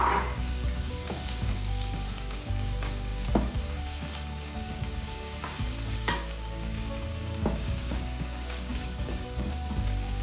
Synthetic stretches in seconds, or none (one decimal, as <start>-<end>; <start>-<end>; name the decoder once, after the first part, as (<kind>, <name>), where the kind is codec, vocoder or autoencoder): 0.0-10.2 (codec, DAC)